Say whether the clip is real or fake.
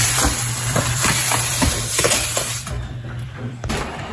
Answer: fake